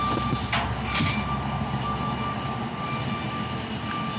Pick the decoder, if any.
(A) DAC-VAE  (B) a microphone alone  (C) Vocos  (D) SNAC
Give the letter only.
B